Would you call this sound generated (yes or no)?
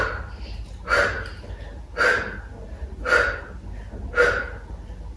no